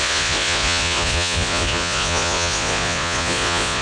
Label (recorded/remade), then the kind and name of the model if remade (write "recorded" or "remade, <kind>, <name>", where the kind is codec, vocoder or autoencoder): remade, vocoder, Vocos